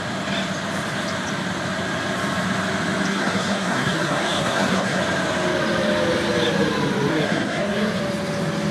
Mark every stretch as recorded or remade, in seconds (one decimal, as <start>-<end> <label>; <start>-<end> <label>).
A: 0.0-3.1 recorded; 3.1-5.0 remade; 5.0-7.1 recorded; 7.1-8.0 remade; 8.0-8.7 recorded